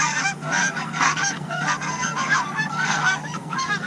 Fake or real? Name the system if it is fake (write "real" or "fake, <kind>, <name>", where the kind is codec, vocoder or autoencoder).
fake, codec, SNAC